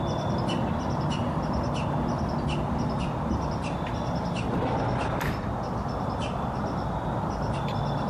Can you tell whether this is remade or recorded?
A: recorded